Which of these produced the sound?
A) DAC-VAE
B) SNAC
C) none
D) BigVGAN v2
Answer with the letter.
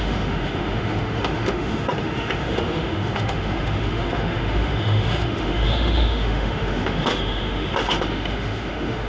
A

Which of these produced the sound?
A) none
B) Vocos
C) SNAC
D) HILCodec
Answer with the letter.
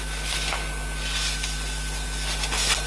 A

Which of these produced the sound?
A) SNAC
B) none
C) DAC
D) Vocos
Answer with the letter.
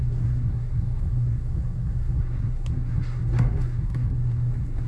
A